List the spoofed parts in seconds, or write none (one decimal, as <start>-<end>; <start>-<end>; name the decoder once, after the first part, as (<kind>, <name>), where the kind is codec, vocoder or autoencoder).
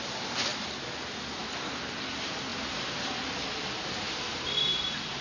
0.0-0.5 (vocoder, BigVGAN v2); 1.0-1.4; 2.1-5.2